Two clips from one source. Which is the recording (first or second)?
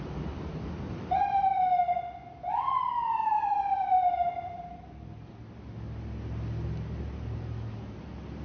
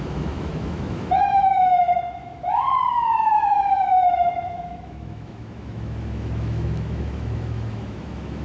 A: first